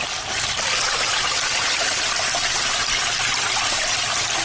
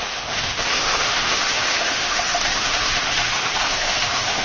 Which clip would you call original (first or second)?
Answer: first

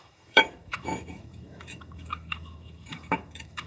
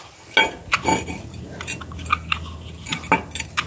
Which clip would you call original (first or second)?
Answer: second